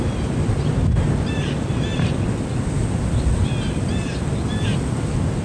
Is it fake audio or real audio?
real